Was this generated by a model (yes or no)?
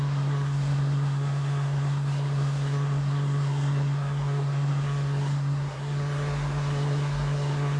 yes